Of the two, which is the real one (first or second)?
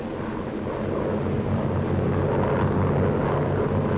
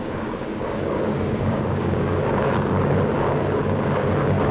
first